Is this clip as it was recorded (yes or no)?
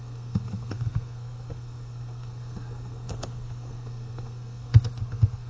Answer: no